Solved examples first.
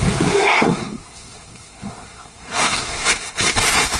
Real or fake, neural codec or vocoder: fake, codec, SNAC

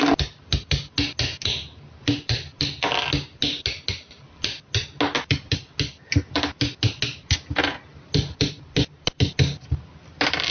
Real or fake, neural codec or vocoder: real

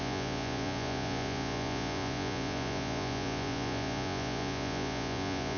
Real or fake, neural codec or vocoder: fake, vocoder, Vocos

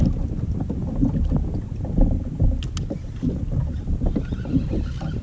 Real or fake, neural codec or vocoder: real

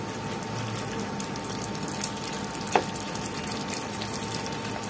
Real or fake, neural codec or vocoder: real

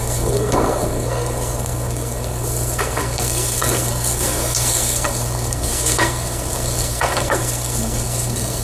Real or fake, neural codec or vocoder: fake, codec, SNAC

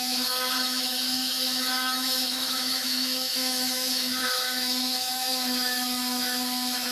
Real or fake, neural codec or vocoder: fake, autoencoder, DAC-VAE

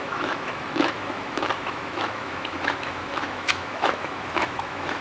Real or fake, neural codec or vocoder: fake, autoencoder, DAC-VAE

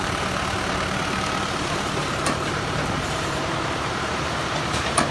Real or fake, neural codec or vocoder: fake, vocoder, BigVGAN v2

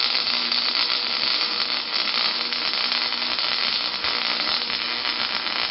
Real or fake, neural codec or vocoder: fake, autoencoder, DAC-VAE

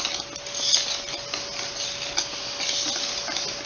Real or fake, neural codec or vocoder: real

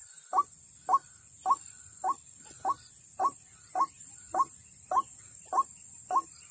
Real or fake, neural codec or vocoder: real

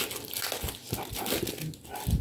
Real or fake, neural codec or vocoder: real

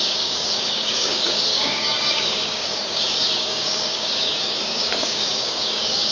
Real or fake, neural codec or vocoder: fake, codec, DAC